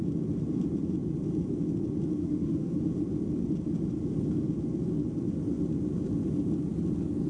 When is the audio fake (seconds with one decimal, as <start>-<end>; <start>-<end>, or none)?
2.2-2.8